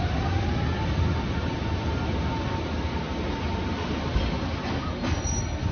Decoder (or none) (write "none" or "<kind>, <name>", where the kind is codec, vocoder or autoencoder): none